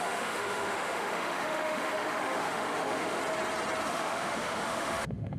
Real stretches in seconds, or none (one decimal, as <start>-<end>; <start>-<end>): 3.2-3.9